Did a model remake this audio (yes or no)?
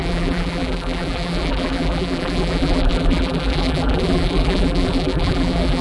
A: yes